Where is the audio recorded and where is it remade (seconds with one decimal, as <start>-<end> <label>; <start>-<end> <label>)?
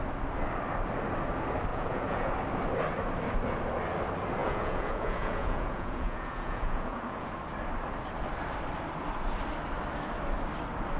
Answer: 0.0-1.7 recorded; 1.7-2.3 remade; 2.3-4.4 recorded; 4.4-7.3 remade; 7.3-11.0 recorded